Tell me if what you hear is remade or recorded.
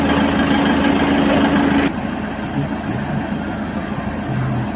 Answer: recorded